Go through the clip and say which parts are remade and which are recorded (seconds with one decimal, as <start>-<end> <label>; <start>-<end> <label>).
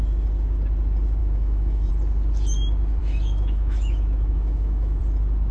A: 0.0-1.2 recorded; 1.2-1.9 remade; 1.9-3.0 recorded; 3.0-5.0 remade; 5.0-5.5 recorded